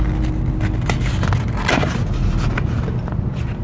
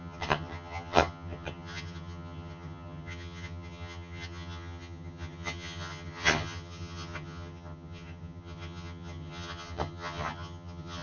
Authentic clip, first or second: first